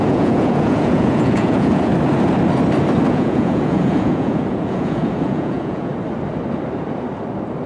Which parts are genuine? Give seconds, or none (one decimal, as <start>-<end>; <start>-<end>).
1.9-3.1; 5.9-7.7